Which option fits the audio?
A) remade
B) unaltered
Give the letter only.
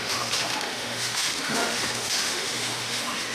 A